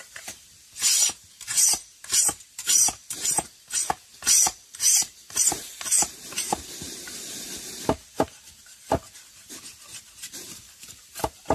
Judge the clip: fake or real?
fake